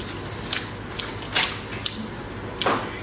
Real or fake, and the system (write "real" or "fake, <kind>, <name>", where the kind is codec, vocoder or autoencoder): real